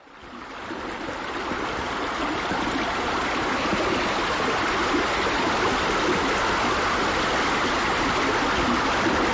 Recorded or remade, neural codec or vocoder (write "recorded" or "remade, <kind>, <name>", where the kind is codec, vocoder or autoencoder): recorded